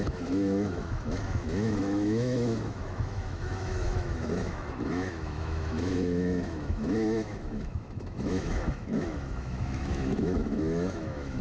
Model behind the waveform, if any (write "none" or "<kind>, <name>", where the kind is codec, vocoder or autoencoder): autoencoder, DAC-VAE